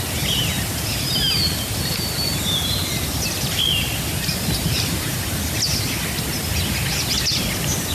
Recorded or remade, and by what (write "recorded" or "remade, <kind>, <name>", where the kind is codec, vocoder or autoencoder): recorded